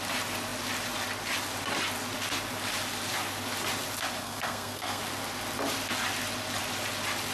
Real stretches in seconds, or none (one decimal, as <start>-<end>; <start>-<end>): 0.0-4.2; 5.0-7.3